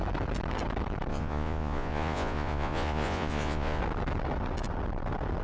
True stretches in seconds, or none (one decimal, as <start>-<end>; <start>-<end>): 0.0-1.1; 3.8-5.4